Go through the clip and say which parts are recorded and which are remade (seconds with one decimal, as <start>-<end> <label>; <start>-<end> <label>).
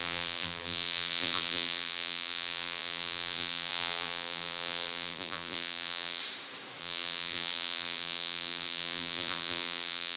0.0-6.2 remade; 6.2-6.8 recorded; 6.8-10.2 remade